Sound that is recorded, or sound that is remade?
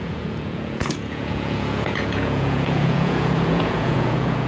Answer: remade